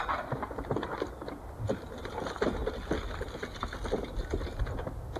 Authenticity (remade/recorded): recorded